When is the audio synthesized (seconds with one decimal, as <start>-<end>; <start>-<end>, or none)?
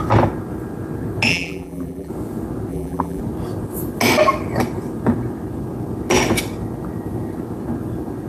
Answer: 1.3-2.1; 2.7-3.2